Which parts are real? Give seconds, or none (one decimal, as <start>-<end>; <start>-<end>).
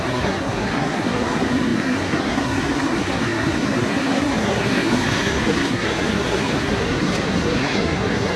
none